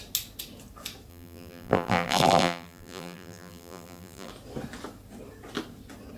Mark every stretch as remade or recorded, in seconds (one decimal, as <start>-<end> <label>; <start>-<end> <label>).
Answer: 0.0-1.1 recorded; 1.1-4.3 remade; 4.3-6.2 recorded

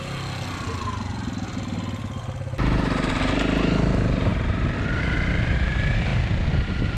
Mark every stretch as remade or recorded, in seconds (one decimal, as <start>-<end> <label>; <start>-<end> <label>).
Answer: 0.0-7.0 recorded

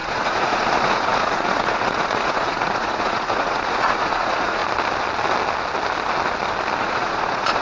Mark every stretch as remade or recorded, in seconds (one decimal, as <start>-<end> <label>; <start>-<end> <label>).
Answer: 0.0-4.6 remade; 4.6-6.8 recorded; 6.8-7.6 remade

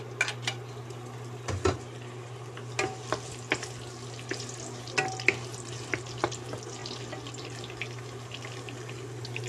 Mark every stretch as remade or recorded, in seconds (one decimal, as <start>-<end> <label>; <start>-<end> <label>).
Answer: 0.0-9.5 recorded

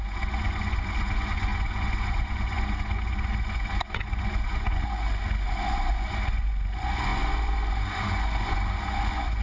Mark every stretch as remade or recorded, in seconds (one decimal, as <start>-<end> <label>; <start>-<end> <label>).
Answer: 0.0-9.4 remade